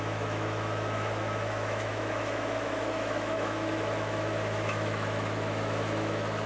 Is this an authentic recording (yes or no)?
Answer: no